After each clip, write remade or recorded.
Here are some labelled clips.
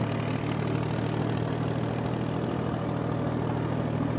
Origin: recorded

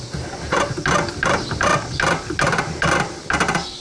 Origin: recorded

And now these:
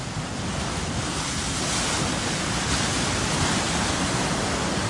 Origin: recorded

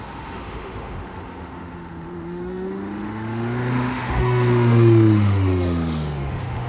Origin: remade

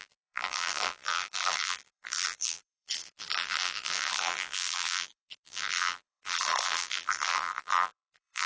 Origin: remade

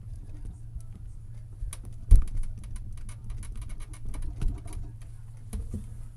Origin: recorded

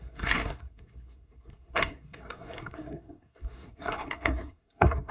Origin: remade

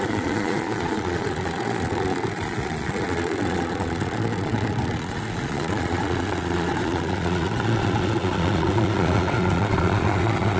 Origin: remade